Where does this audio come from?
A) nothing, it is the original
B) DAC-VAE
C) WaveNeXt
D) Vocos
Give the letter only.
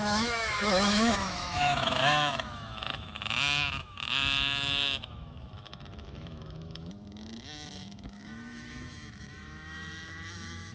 B